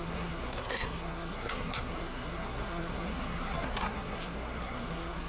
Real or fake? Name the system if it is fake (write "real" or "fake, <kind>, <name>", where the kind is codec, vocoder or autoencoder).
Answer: fake, codec, SNAC